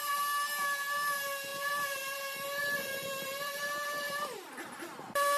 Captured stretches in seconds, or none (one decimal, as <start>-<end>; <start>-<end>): 0.0-1.5; 4.7-5.4